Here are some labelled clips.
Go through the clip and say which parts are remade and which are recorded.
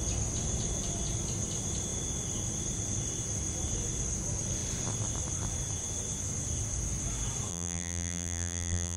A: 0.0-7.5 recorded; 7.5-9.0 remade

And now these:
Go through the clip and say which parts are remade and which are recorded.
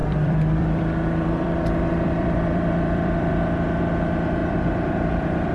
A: 0.0-3.3 remade; 3.3-4.4 recorded; 4.4-5.5 remade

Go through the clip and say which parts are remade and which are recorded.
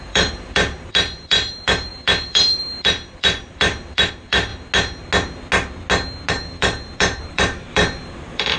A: 0.0-4.5 remade; 4.5-6.3 recorded; 6.3-8.6 remade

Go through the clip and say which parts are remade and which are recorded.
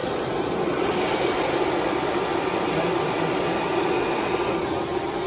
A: 0.0-1.7 remade; 1.7-2.3 recorded; 2.3-2.8 remade; 2.8-5.3 recorded